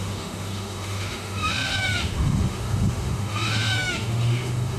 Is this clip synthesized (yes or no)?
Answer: yes